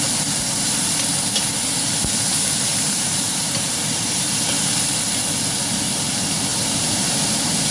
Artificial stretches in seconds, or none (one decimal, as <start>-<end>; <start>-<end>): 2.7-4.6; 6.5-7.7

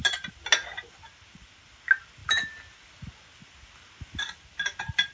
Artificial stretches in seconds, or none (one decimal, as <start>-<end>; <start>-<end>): none

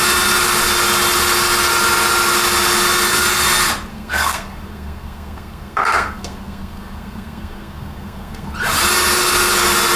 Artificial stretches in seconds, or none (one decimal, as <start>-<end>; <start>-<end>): 3.9-8.5

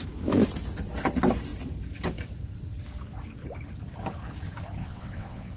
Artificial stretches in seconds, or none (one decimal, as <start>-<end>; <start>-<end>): 4.8-5.6

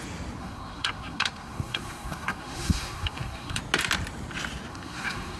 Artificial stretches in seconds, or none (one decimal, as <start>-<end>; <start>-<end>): 0.4-3.6; 4.7-5.4